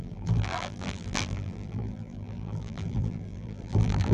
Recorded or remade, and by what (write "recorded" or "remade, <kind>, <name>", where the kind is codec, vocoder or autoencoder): remade, vocoder, BigVGAN v2